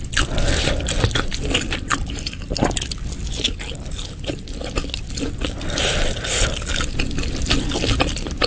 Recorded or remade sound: recorded